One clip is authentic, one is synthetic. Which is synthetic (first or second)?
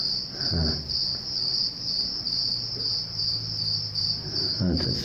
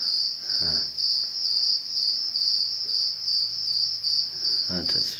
first